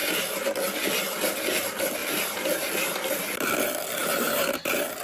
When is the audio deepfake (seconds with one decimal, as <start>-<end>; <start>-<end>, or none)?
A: 2.0-2.7; 4.0-4.6